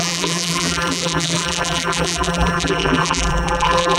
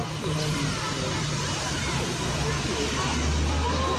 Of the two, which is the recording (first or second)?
second